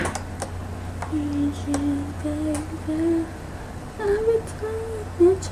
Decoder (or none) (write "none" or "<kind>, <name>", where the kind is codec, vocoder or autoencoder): none